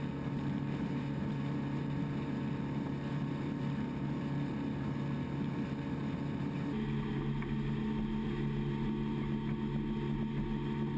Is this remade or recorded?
recorded